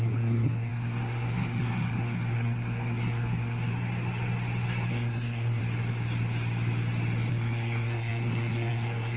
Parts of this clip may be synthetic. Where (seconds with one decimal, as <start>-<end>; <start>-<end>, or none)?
0.0-3.7; 4.9-5.6; 7.3-9.2